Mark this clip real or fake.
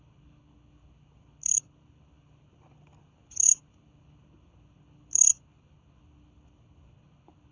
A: fake